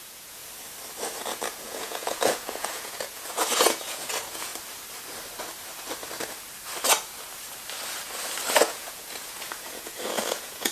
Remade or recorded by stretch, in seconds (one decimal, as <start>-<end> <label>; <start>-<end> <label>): 0.0-0.4 remade; 0.4-1.2 recorded; 1.2-4.5 remade; 4.5-8.5 recorded; 8.5-10.7 remade